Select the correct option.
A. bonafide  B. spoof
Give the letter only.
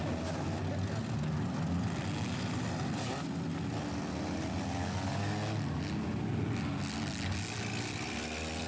A